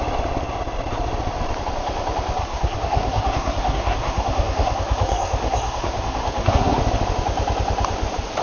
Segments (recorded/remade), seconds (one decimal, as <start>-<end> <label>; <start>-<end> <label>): 0.0-2.4 recorded; 2.4-6.8 remade; 6.8-8.4 recorded